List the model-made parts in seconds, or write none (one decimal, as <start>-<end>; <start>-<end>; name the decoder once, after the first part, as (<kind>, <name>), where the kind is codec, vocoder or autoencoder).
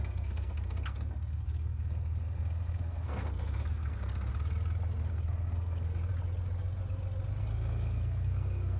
0.0-4.3 (codec, SNAC); 5.1-6.1; 7.4-8.8